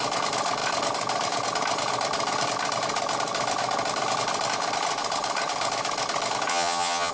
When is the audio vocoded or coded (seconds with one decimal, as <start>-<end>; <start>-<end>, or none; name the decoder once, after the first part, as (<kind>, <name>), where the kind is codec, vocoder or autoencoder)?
6.5-7.1 (vocoder, HiFi-GAN)